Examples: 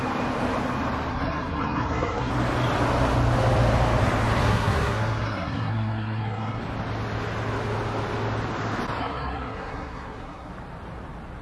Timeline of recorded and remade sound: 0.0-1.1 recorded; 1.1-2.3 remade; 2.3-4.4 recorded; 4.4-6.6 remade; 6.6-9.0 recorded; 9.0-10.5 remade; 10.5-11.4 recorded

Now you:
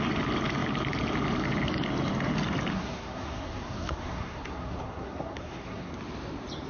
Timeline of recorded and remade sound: 0.0-2.7 recorded; 2.7-5.9 remade; 5.9-6.7 recorded